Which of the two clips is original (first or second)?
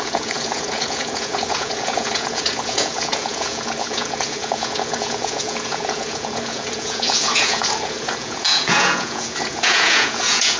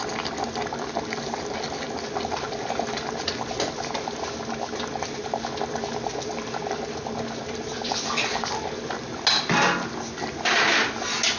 second